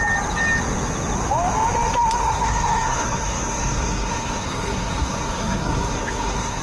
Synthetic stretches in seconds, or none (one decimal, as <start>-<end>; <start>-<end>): 2.2-6.6

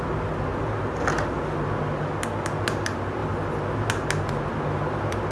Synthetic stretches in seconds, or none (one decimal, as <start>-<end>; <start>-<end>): none

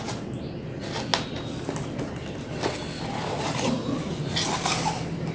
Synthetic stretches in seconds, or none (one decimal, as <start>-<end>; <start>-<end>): none